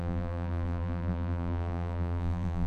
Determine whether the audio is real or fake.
fake